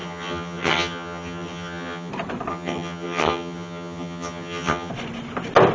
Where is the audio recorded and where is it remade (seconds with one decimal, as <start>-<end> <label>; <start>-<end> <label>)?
0.0-2.1 remade; 2.1-2.5 recorded; 2.5-4.9 remade; 4.9-5.7 recorded